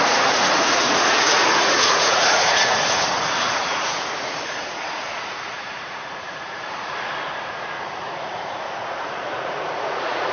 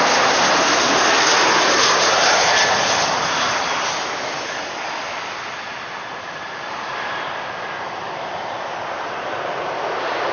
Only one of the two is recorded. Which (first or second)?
second